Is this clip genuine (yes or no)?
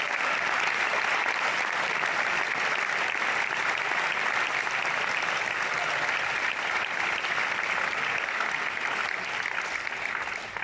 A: yes